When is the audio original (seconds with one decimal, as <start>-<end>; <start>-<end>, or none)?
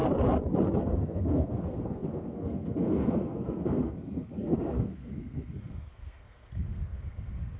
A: 0.0-0.8